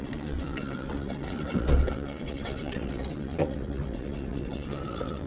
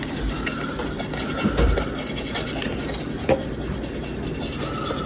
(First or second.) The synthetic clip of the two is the first